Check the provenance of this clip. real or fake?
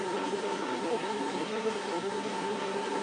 fake